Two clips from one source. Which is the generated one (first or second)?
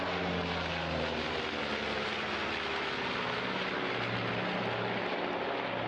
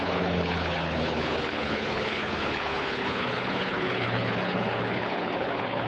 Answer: second